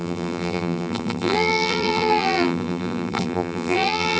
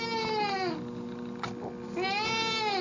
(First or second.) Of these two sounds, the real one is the second